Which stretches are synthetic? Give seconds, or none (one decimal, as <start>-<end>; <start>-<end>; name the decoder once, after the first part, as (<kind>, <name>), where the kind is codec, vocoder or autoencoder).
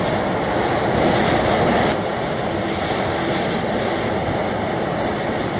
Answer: none